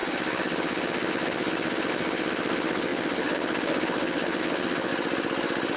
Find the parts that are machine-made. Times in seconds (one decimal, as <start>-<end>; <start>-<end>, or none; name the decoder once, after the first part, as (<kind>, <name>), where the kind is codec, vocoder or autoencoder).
0.0-4.9 (vocoder, HiFi-GAN)